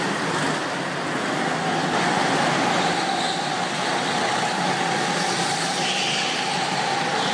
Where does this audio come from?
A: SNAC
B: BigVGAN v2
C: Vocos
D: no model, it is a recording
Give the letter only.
D